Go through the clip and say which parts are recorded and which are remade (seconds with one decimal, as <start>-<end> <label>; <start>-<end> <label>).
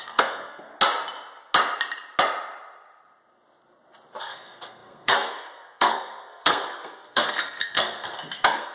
0.0-0.7 remade; 0.7-4.2 recorded; 4.2-8.7 remade